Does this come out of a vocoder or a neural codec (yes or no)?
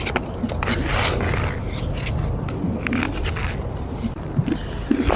no